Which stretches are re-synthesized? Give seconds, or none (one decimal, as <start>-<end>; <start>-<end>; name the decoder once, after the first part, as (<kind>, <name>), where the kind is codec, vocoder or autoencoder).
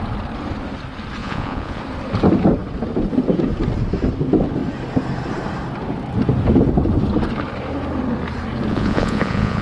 1.2-1.8 (vocoder, Vocos); 8.7-9.6